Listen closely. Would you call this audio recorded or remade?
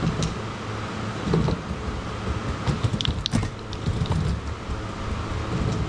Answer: recorded